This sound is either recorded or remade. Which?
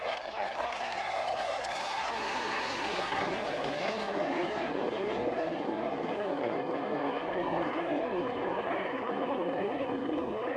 remade